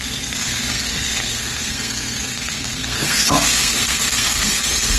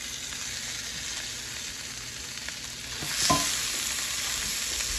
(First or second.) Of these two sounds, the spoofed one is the first